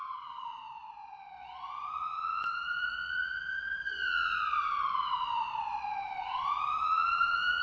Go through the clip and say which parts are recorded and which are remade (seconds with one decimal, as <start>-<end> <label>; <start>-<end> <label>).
0.0-7.6 remade

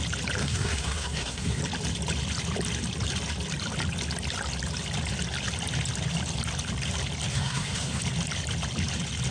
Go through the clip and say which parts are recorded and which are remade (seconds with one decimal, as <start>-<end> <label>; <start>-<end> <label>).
0.0-0.4 recorded; 0.4-1.6 remade; 1.6-7.3 recorded; 7.3-8.0 remade; 8.0-9.3 recorded